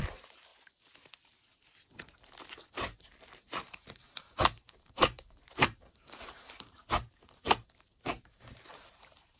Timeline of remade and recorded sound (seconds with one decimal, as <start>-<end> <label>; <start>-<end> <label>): 0.0-0.5 remade; 0.5-3.6 recorded; 3.6-9.4 remade